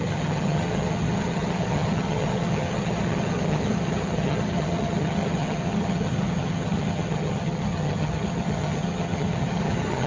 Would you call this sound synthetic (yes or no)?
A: yes